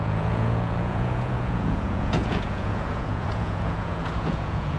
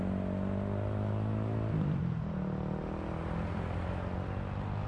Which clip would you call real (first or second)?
second